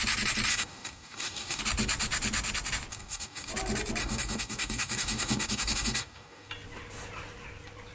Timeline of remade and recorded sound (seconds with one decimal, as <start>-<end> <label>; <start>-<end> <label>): 0.0-0.5 recorded; 0.5-1.6 remade; 1.6-2.9 recorded; 2.9-3.5 remade; 3.5-4.0 recorded; 4.0-6.5 remade; 6.5-7.9 recorded